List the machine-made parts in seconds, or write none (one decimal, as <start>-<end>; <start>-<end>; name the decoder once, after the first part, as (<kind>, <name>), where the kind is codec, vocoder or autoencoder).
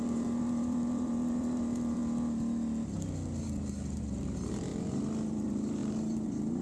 0.0-2.0 (vocoder, BigVGAN v2); 4.0-4.7; 5.3-6.6